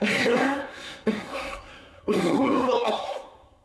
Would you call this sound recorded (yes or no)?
no